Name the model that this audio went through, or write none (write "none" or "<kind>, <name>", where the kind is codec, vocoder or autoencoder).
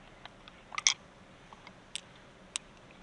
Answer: none